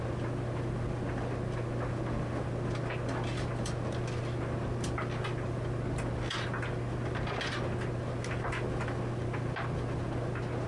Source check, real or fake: real